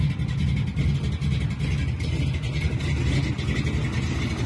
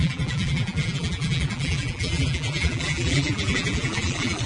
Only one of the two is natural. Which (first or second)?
first